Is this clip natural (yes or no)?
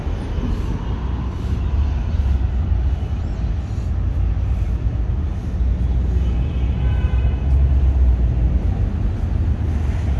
yes